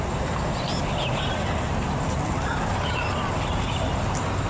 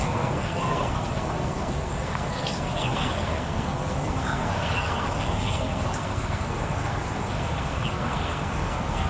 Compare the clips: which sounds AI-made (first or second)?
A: second